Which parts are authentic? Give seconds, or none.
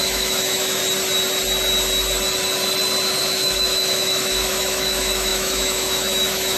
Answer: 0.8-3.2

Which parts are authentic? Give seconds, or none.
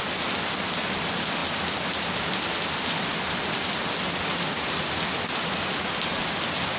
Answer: 0.0-6.8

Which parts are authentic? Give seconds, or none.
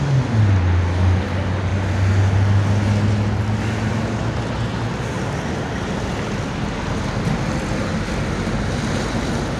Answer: 0.0-9.6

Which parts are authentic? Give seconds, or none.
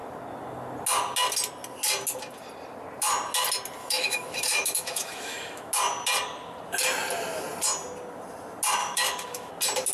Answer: 0.0-3.8; 5.7-8.8; 9.5-9.9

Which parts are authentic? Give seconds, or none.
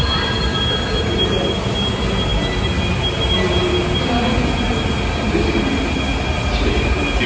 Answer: 0.0-7.3